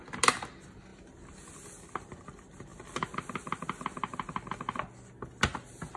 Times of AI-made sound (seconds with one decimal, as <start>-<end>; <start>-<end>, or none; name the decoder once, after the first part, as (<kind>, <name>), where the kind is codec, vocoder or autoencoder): none